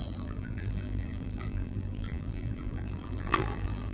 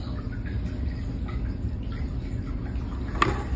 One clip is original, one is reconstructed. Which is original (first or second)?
second